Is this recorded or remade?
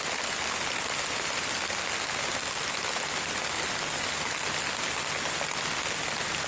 recorded